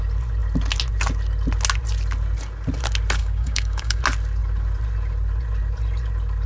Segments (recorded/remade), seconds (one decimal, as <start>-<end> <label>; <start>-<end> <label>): 0.0-3.2 recorded; 3.2-4.0 remade; 4.0-6.5 recorded